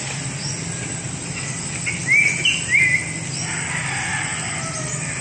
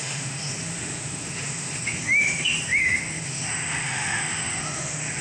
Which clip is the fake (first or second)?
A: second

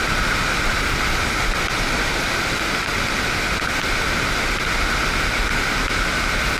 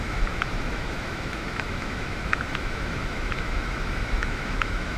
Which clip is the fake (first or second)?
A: second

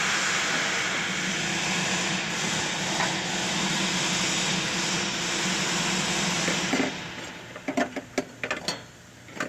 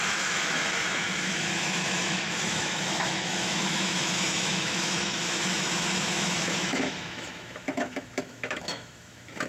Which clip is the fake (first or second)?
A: second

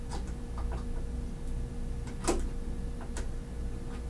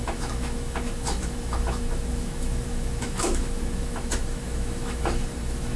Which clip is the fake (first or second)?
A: second